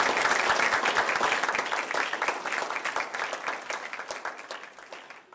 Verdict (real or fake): real